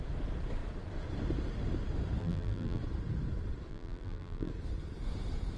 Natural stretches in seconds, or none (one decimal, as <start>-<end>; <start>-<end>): 0.0-2.2; 2.8-3.7; 4.5-5.6